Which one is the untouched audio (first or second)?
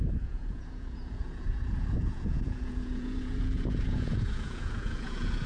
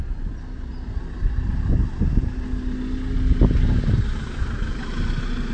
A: second